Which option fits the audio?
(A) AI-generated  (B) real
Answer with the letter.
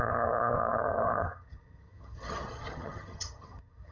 A